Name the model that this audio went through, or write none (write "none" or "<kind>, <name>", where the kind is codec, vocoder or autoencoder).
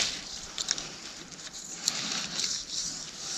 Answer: vocoder, BigVGAN v2